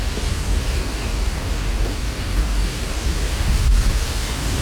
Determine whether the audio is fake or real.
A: fake